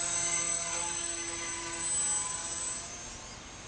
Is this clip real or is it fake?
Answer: real